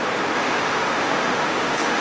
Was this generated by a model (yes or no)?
yes